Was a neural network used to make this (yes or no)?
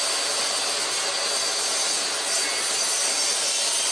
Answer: no